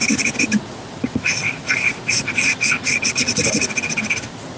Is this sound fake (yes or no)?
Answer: no